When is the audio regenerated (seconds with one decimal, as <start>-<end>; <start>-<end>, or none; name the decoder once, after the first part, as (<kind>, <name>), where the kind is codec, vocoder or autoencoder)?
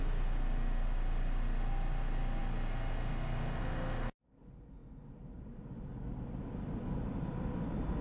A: none